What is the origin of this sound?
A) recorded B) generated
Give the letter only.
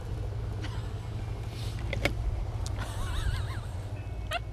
A